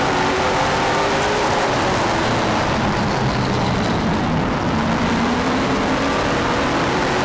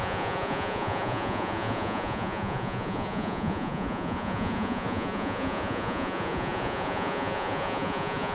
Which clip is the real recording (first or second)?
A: first